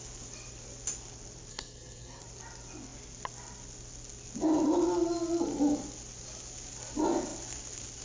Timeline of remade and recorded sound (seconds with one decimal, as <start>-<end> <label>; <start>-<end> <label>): 0.0-1.5 recorded; 1.5-2.2 remade; 2.2-8.0 recorded